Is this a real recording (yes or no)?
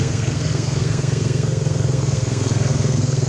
no